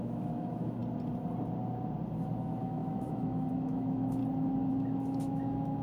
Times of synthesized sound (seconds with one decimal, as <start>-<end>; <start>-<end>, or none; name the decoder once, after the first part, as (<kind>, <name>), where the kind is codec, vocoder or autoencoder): 0.0-0.8 (autoencoder, DAC-VAE); 2.4-4.2; 4.7-5.8